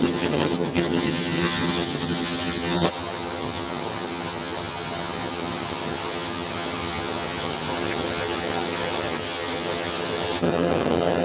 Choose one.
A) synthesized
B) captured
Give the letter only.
A